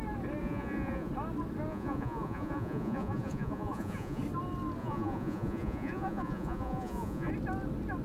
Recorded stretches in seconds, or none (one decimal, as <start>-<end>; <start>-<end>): 0.0-0.4; 1.1-1.7; 4.2-4.8; 7.3-8.0